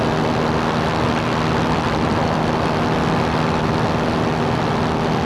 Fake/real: real